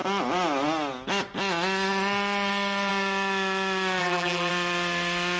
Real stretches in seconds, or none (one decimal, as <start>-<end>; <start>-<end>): 0.0-4.0; 4.5-5.4